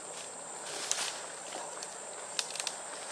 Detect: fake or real real